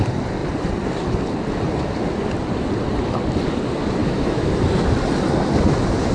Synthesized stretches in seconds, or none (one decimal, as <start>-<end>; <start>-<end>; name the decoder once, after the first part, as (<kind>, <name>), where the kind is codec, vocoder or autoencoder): 4.0-4.5 (autoencoder, DAC-VAE)